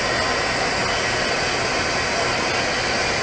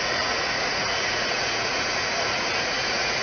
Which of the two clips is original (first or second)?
first